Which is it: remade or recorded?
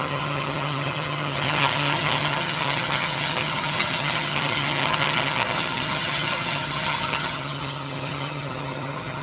remade